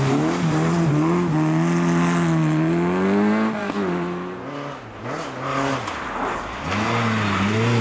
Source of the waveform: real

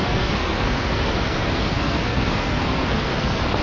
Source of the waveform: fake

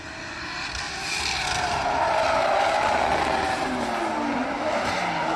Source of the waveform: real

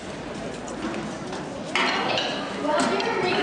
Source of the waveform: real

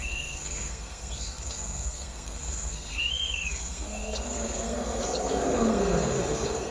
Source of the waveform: fake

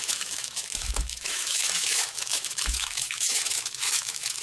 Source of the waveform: fake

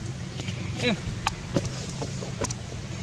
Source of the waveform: real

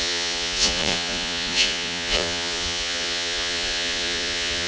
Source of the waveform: fake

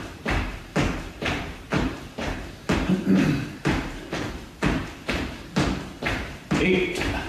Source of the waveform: fake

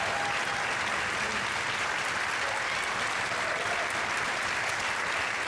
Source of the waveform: real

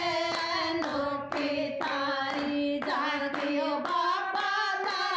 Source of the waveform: real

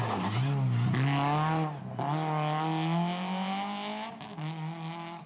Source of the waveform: real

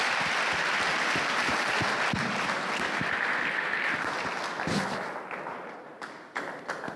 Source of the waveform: real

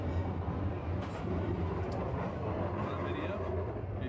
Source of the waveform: real